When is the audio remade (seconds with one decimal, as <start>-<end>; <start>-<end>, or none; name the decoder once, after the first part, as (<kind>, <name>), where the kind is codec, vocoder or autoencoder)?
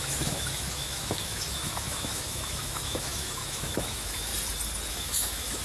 0.0-4.3 (autoencoder, DAC-VAE); 4.9-5.6